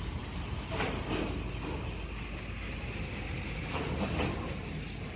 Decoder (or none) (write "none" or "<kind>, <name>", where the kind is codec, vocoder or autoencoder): none